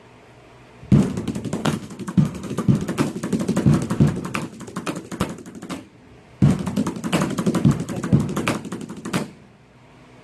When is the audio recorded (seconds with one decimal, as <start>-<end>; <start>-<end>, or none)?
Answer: 0.0-1.6; 2.8-10.2